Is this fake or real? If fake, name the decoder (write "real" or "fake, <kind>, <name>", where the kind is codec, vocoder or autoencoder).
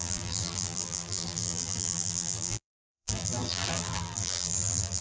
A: fake, vocoder, BigVGAN v2